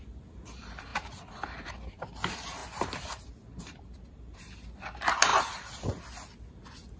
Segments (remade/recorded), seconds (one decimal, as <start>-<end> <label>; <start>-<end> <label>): 0.0-7.0 recorded